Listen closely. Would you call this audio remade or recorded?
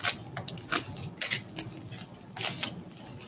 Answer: recorded